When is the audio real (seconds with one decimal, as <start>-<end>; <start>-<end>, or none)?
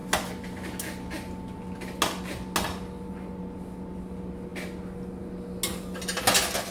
0.0-6.7